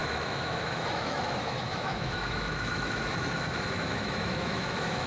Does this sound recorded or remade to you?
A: remade